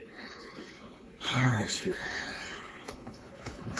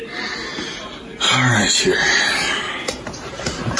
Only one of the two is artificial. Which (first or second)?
first